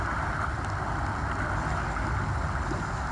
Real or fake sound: real